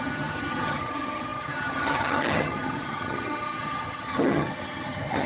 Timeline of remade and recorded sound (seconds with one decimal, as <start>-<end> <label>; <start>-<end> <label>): 0.0-5.3 remade